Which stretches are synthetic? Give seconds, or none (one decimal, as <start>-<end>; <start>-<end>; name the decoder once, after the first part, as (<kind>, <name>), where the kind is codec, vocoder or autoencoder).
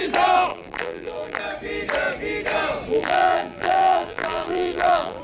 0.5-1.4 (vocoder, BigVGAN v2); 2.9-5.2